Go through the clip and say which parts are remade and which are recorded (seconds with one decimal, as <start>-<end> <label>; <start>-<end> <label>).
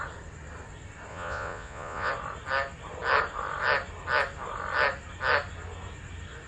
0.0-1.1 recorded; 1.1-2.1 remade; 2.1-6.5 recorded